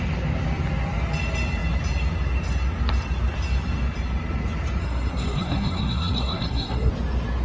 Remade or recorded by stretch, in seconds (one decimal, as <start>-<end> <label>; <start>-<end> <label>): 0.0-4.8 recorded; 4.8-6.9 remade; 6.9-7.4 recorded

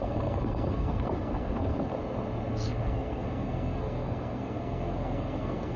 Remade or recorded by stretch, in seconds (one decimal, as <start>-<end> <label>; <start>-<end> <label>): 0.0-1.9 remade; 1.9-2.5 recorded; 2.5-5.8 remade

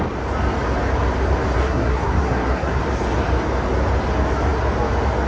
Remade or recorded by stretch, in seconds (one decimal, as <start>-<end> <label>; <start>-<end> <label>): 0.0-1.6 recorded; 1.6-2.8 remade; 2.8-5.3 recorded

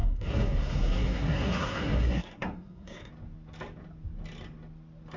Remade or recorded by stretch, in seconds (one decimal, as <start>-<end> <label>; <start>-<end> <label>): 0.0-3.1 remade; 3.1-5.2 recorded